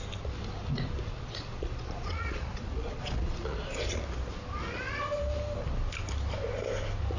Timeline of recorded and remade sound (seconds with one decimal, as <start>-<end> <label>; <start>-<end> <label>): 0.0-1.1 recorded; 1.1-4.0 remade; 4.0-7.2 recorded